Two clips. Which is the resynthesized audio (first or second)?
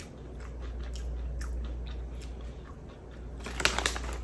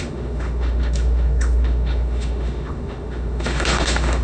second